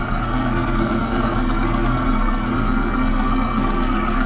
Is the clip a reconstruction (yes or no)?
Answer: yes